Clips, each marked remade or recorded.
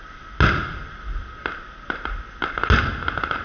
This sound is recorded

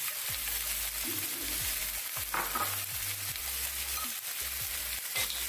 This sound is recorded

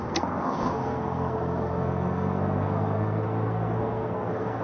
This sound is remade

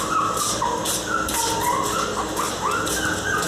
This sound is recorded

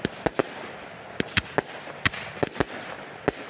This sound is recorded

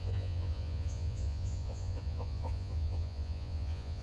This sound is remade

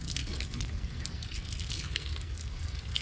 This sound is remade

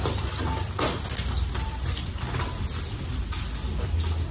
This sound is recorded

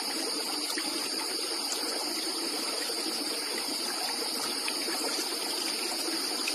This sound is recorded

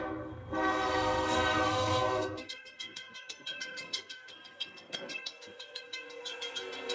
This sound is remade